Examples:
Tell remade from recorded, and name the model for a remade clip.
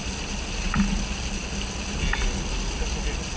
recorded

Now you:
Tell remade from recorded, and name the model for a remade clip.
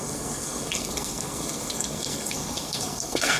remade, codec, SNAC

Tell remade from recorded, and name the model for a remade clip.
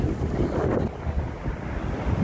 recorded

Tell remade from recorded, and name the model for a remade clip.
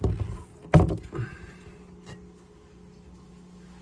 recorded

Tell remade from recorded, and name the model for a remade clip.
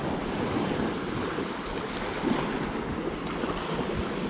recorded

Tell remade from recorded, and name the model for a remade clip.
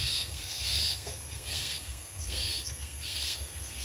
remade, codec, SNAC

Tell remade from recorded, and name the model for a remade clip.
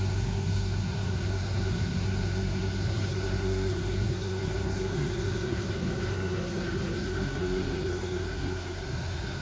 remade, codec, SNAC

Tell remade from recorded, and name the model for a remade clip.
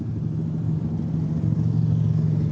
recorded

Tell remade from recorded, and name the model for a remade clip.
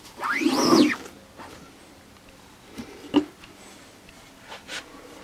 recorded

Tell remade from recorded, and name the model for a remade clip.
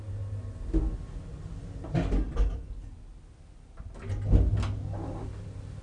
recorded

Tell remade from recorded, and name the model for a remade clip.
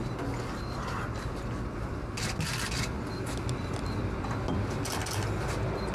recorded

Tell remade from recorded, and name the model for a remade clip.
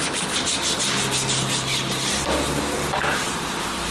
recorded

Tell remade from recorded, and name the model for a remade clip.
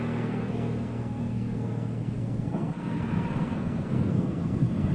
remade, codec, SNAC